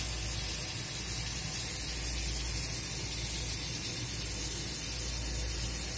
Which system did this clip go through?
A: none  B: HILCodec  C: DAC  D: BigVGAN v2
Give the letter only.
A